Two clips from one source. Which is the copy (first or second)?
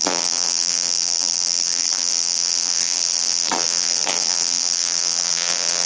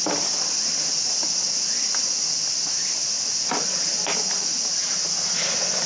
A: first